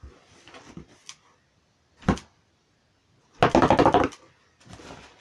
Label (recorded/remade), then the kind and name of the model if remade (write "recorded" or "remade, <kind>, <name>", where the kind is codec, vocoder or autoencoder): recorded